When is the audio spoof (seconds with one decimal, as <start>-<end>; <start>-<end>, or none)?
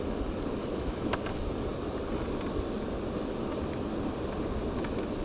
0.6-1.2